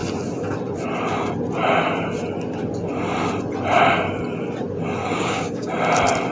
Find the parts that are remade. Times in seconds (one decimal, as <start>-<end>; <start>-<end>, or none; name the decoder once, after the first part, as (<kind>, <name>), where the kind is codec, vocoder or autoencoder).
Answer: 5.0-5.7 (codec, DAC)